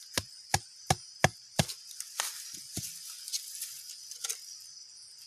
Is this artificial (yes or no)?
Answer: no